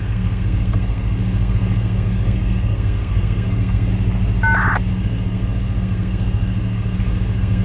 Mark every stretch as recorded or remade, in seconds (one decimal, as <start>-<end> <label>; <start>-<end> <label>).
0.0-3.9 remade; 3.9-4.9 recorded; 4.9-7.6 remade